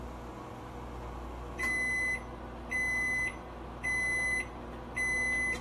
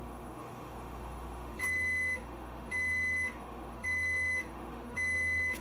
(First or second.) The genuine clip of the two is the first